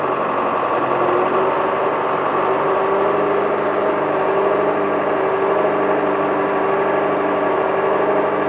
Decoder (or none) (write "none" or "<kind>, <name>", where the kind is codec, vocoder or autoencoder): none